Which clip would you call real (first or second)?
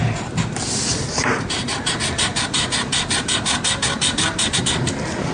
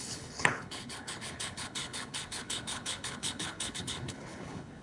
first